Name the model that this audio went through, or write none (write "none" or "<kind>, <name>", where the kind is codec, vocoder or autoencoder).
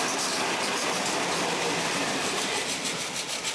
none